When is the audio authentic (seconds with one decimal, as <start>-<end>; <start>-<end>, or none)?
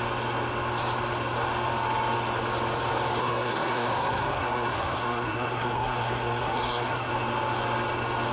0.0-3.2; 7.1-8.3